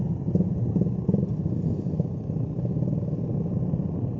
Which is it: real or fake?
real